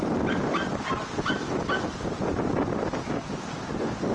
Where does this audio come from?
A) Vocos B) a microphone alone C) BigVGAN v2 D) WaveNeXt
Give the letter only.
B